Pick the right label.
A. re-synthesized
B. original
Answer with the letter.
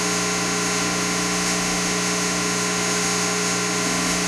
A